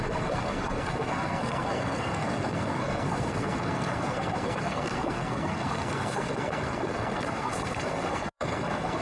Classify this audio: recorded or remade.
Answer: remade